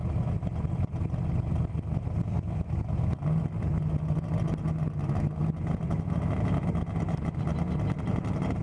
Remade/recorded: recorded